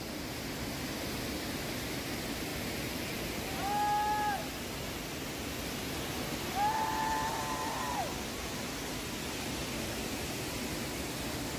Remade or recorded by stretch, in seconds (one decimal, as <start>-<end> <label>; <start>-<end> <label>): 0.0-2.5 recorded; 2.5-3.2 remade; 3.2-11.6 recorded